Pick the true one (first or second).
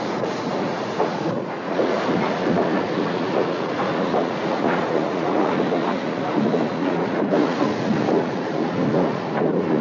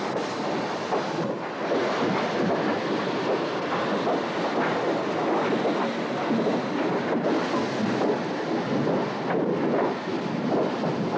second